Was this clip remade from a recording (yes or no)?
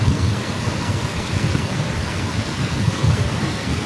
yes